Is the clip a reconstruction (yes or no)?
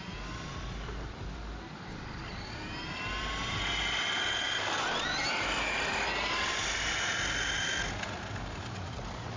no